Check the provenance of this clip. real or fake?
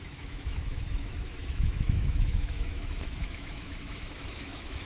fake